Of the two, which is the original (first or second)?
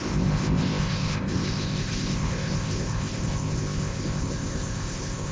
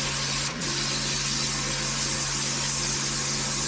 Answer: second